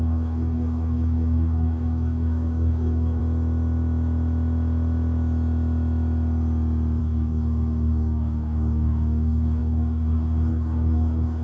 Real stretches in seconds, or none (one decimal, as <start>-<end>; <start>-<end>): 3.2-7.0